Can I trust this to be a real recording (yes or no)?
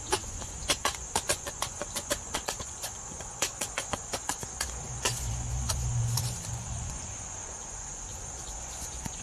no